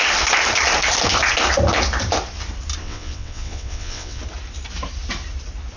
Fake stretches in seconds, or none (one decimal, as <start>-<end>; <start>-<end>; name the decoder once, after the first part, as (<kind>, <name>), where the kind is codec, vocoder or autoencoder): 2.8-4.2 (vocoder, WaveNeXt)